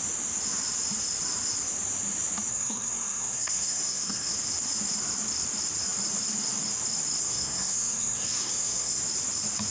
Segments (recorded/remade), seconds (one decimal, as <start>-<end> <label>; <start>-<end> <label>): 0.0-2.5 recorded; 2.5-4.3 remade; 4.3-7.2 recorded; 7.2-9.0 remade; 9.0-9.7 recorded